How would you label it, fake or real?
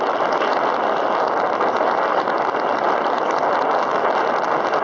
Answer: real